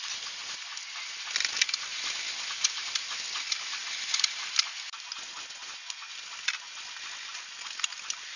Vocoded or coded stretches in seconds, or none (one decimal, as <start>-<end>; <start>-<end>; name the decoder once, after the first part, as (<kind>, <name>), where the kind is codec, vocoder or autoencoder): none